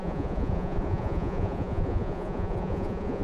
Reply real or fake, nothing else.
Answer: fake